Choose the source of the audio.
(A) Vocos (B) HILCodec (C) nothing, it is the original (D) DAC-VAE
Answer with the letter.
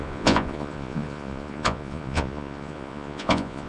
A